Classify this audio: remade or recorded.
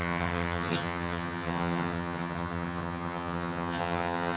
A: remade